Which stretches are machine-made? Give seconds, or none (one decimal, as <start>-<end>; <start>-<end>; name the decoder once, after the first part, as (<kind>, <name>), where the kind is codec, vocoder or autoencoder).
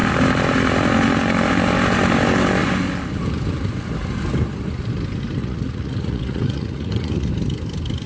5.4-7.3 (vocoder, Vocos)